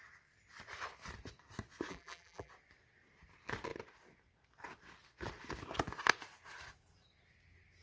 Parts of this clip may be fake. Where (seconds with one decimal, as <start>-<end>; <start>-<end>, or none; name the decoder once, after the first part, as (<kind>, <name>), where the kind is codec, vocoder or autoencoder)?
1.9-2.5 (vocoder, BigVGAN v2)